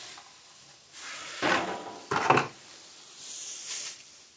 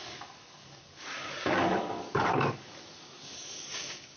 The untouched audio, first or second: first